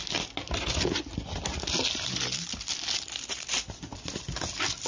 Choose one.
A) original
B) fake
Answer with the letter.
A